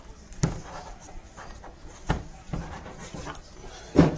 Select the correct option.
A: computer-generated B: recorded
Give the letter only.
A